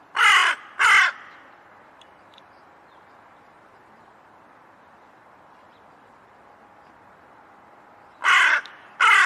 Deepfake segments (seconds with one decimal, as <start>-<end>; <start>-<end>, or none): 0.0-0.4; 1.5-9.3

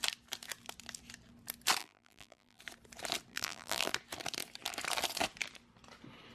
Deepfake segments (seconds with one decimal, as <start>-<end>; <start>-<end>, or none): 1.8-2.6; 3.3-3.9

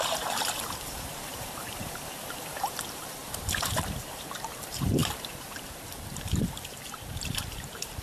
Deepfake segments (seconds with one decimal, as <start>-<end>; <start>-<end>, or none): 0.0-8.0

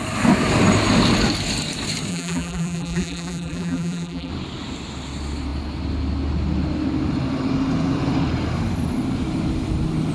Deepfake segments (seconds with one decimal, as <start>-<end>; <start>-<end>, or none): 2.1-4.3

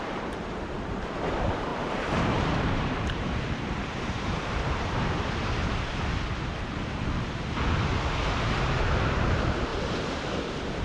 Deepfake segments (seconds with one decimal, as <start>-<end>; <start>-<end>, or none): 0.0-5.6; 8.6-10.8

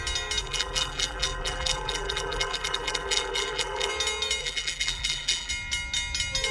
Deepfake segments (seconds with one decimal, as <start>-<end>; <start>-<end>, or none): 0.4-3.9; 4.4-5.5